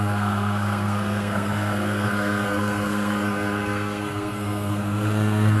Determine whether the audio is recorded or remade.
remade